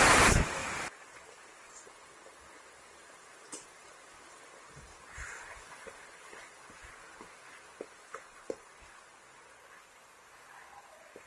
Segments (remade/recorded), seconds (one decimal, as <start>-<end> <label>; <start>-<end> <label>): 0.0-11.3 recorded